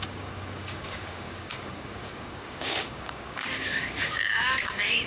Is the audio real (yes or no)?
no